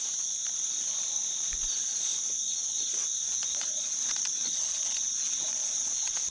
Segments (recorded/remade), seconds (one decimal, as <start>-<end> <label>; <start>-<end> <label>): 0.0-0.4 remade; 0.4-1.7 recorded; 1.7-6.3 remade